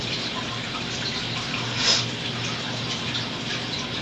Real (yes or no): yes